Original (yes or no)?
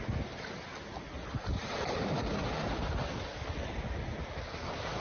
yes